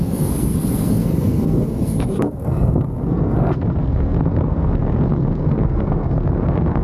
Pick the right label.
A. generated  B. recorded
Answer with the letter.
A